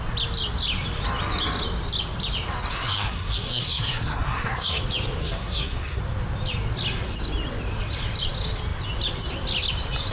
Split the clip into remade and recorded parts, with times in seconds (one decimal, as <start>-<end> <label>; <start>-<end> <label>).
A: 0.0-2.7 recorded; 2.7-4.8 remade; 4.8-5.2 recorded; 5.2-6.0 remade; 6.0-10.1 recorded